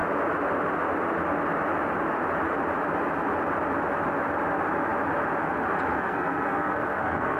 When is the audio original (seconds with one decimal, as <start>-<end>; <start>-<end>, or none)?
0.0-6.0